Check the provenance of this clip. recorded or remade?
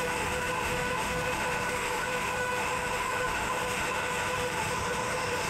remade